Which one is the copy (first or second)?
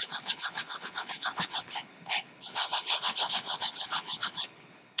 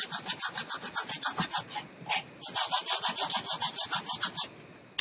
first